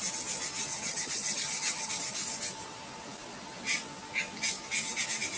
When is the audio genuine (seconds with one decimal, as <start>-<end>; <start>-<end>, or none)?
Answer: 0.0-0.7; 1.9-5.4

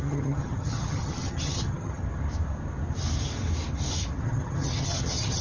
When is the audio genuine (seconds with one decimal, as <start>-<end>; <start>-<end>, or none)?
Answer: 2.0-4.2

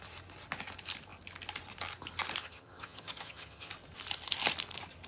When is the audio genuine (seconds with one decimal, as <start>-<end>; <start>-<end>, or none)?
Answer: 0.0-2.4; 3.7-5.1

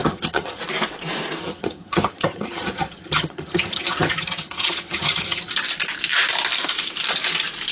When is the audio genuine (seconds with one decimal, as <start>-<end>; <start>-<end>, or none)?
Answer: 0.6-1.4; 5.5-7.7

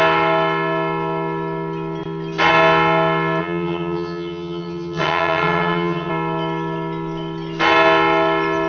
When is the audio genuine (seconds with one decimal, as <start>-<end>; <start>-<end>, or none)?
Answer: 0.0-3.4; 6.1-8.7

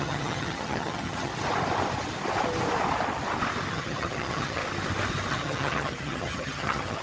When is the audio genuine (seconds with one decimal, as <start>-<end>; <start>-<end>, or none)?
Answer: 1.3-3.7; 4.6-5.3

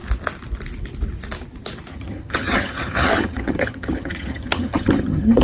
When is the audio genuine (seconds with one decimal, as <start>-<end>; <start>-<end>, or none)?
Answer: 0.0-1.9

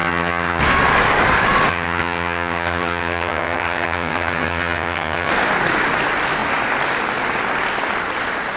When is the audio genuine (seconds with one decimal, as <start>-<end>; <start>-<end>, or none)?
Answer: 0.6-1.7; 5.3-8.6